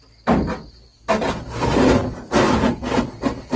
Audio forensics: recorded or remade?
recorded